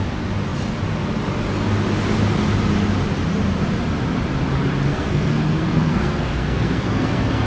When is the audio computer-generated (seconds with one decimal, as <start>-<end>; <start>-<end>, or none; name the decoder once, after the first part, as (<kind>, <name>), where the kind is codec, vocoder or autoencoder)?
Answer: 4.9-7.5 (codec, SNAC)